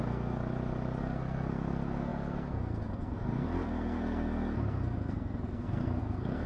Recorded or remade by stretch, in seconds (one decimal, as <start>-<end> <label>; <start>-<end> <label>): 0.0-0.4 remade; 0.4-1.0 recorded; 1.0-6.5 remade